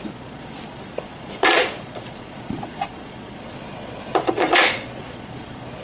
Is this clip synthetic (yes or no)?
yes